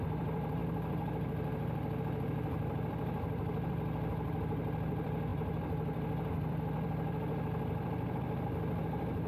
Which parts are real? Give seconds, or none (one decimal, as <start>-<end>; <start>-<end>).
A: 0.0-9.3